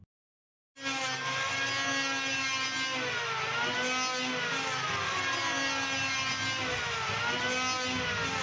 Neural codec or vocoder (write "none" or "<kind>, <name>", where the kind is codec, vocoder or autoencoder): none